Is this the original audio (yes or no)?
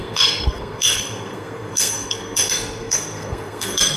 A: no